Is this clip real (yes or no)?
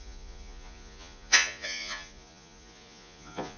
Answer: no